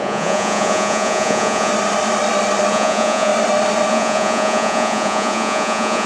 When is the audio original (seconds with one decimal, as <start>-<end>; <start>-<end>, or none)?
1.7-2.7; 3.3-3.9

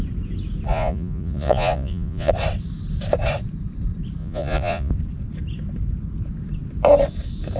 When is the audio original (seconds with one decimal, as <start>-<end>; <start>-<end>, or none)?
0.0-0.7; 2.3-4.2; 4.9-7.6